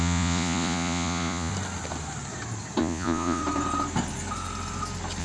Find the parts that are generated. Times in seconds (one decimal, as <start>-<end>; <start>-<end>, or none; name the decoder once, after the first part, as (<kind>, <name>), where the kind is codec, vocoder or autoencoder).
0.0-1.5 (vocoder, Vocos); 2.8-3.4